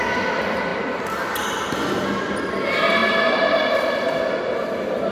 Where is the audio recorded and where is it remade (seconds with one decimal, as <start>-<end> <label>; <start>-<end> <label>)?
0.0-0.7 recorded; 0.7-1.4 remade; 1.4-3.0 recorded; 3.0-4.1 remade; 4.1-5.1 recorded